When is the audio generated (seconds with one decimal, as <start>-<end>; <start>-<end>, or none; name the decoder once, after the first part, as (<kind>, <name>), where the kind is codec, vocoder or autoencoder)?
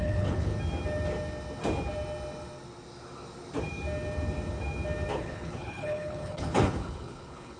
0.0-0.5 (codec, HILCodec); 5.1-7.6